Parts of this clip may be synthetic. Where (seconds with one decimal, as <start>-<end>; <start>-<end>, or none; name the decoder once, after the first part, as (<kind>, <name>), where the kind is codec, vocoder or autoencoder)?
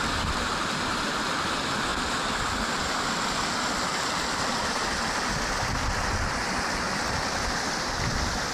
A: none